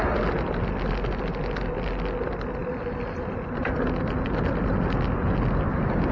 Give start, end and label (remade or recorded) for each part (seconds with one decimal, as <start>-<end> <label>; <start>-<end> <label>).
0.0-6.1 recorded